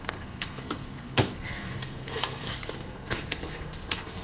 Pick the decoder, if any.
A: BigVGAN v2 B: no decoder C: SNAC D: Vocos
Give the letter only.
C